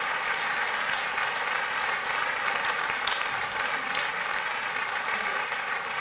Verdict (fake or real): real